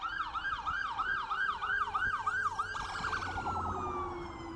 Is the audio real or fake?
real